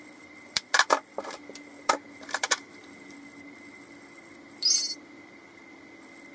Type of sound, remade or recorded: remade